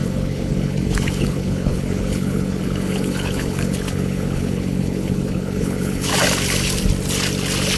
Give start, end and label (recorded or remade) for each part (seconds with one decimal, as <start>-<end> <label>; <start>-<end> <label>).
0.0-6.1 remade; 6.1-7.8 recorded